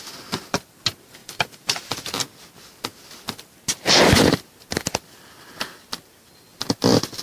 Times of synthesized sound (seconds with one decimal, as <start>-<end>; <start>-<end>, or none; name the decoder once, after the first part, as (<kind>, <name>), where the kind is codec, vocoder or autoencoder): 1.2-2.1 (vocoder, BigVGAN v2)